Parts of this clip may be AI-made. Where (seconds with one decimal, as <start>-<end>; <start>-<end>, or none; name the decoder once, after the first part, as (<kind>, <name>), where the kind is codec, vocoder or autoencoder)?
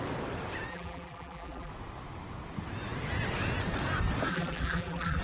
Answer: 0.7-1.7 (vocoder, BigVGAN v2); 4.3-5.2